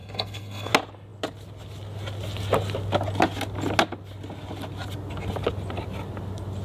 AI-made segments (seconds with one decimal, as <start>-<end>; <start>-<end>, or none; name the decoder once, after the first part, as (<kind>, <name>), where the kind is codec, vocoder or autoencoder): 0.0-0.7 (codec, SNAC)